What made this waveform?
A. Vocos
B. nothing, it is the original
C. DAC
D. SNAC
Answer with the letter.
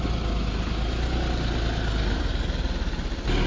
B